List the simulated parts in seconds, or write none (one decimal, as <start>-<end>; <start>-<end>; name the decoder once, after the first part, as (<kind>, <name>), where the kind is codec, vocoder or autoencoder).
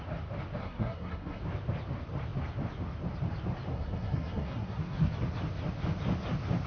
0.6-1.4 (codec, SNAC); 3.7-5.1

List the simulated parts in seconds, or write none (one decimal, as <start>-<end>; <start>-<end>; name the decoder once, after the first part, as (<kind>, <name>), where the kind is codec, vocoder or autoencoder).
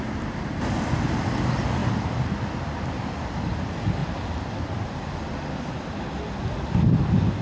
none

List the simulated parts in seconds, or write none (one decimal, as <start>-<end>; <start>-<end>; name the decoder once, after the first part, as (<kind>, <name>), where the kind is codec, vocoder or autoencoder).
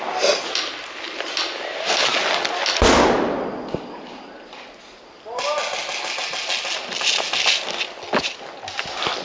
none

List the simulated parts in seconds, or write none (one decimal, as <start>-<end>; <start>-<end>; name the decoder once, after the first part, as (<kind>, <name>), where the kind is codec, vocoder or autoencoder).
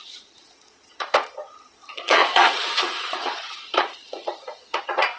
0.0-5.2 (vocoder, Vocos)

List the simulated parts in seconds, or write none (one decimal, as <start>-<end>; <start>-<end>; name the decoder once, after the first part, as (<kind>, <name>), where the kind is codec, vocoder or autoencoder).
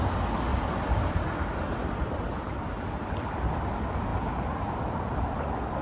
0.5-3.5 (vocoder, BigVGAN v2)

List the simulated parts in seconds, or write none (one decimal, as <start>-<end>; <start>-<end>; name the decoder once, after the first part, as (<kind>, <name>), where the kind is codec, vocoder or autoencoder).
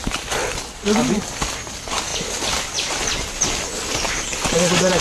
2.1-3.6 (vocoder, BigVGAN v2)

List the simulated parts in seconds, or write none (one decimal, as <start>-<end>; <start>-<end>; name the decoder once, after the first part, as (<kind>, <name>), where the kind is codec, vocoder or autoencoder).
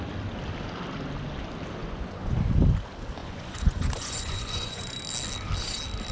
1.8-2.4 (vocoder, Vocos); 3.2-5.0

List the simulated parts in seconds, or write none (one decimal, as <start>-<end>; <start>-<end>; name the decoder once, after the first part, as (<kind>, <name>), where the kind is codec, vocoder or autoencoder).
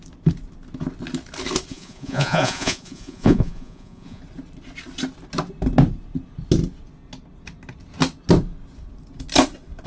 1.7-4.2 (vocoder, Vocos)